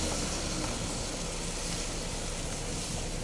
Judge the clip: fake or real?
real